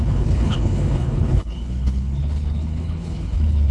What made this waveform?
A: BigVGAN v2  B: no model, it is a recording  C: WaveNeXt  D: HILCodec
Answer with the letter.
D